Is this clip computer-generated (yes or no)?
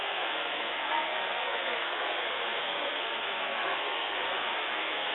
yes